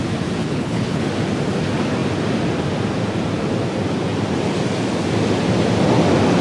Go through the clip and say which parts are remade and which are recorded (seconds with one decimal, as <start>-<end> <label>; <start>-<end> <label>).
0.0-0.4 recorded; 0.4-1.1 remade; 1.1-6.4 recorded